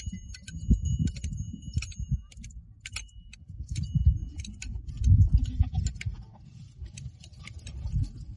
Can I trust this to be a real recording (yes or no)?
yes